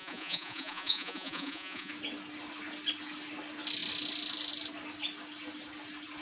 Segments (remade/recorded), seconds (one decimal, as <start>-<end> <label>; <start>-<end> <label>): 0.0-1.9 remade; 1.9-6.2 recorded